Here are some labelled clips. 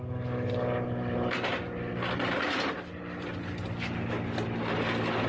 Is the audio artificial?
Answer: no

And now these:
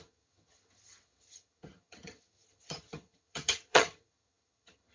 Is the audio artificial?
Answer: yes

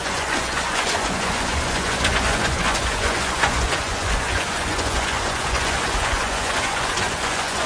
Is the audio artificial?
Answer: yes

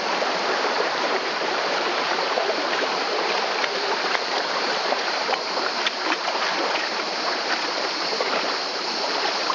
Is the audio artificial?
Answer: yes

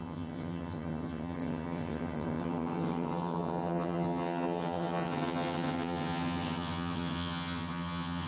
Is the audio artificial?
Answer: yes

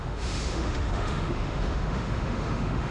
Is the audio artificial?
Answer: yes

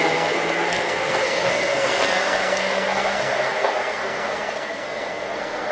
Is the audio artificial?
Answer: yes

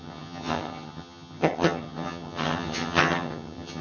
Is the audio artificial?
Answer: yes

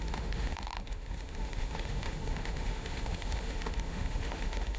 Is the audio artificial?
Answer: yes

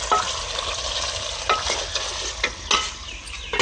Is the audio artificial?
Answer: no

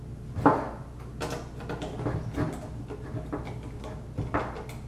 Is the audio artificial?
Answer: no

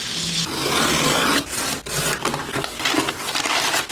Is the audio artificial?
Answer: no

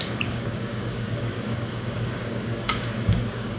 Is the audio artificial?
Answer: yes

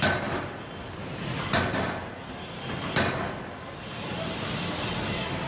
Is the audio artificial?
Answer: no